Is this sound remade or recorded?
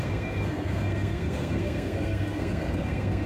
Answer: remade